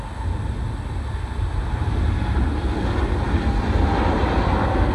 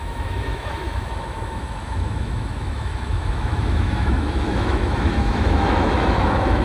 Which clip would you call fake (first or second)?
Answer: second